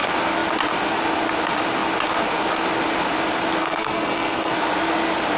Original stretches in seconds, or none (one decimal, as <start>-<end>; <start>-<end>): 0.0-3.6; 4.5-5.4